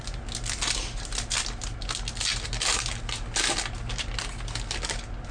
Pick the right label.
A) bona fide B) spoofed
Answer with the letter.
A